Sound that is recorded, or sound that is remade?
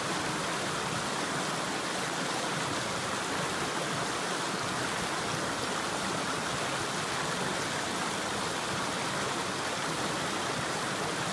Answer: recorded